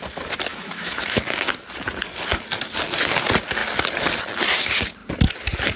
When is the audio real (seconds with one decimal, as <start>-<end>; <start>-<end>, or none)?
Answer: 0.0-0.5; 1.5-5.8